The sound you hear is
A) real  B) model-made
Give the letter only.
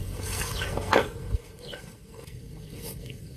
B